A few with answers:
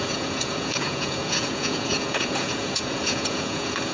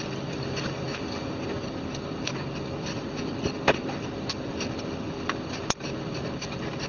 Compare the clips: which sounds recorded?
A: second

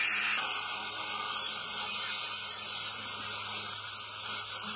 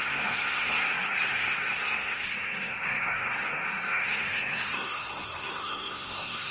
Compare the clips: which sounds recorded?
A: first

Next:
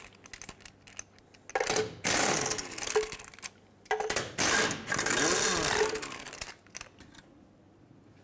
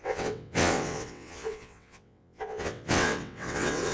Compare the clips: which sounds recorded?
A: first